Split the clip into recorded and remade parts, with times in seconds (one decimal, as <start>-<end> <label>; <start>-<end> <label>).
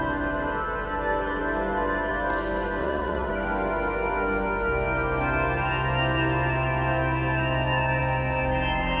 0.0-2.8 recorded; 2.8-3.3 remade; 3.3-9.0 recorded